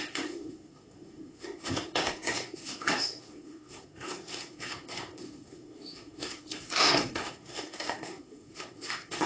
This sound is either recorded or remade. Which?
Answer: remade